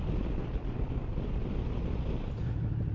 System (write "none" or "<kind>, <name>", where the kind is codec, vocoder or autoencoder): none